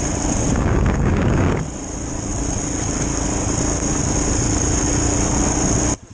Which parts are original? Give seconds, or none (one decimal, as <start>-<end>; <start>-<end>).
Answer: 0.0-0.5; 1.6-6.1